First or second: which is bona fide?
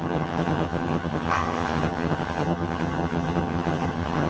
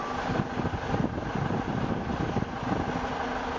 second